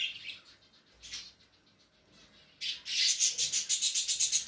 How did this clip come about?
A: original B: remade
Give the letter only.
A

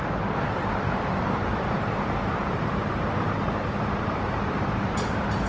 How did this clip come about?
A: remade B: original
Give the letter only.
A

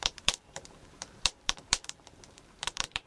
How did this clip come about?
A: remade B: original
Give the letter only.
A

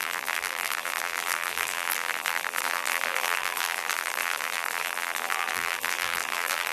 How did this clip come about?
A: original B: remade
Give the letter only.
B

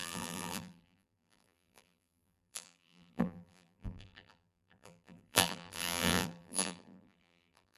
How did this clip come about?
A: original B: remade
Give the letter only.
B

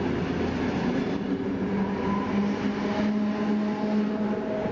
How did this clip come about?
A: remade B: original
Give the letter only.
B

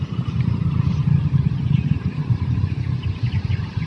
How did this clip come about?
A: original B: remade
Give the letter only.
A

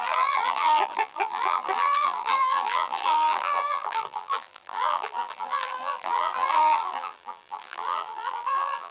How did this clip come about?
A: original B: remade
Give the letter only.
B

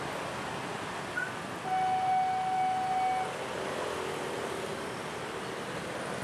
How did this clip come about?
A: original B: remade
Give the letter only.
A